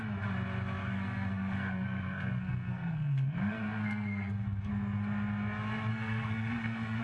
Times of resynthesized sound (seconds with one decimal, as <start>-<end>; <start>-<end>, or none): 0.8-4.7; 5.9-7.0

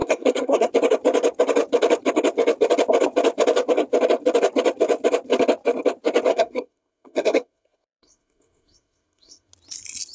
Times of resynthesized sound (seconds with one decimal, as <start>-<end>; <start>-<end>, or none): 0.0-0.7; 6.3-9.5

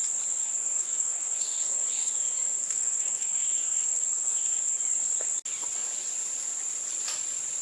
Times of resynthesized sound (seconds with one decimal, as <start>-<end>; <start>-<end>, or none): 0.4-2.1; 2.6-4.8